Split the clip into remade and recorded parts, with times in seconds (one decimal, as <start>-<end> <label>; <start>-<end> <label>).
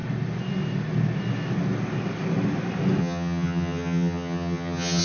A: 0.0-3.0 recorded; 3.0-5.0 remade